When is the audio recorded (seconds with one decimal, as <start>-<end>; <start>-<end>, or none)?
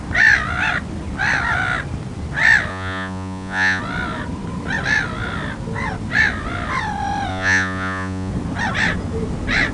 0.0-2.7; 3.8-7.3; 8.3-9.7